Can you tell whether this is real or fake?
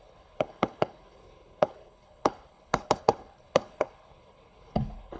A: fake